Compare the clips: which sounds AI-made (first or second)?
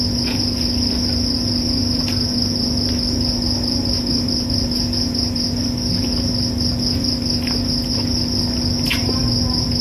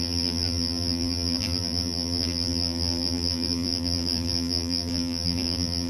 second